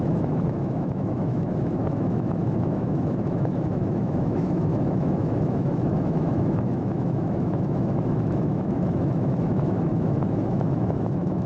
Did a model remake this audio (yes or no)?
yes